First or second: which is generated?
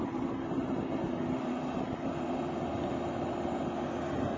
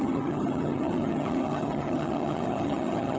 second